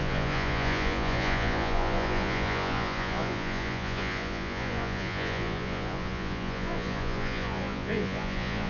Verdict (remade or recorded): remade